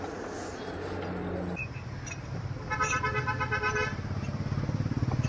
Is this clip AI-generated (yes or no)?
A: no